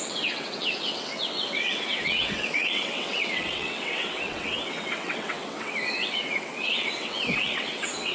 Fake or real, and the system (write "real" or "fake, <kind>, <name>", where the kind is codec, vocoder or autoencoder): fake, vocoder, WaveNeXt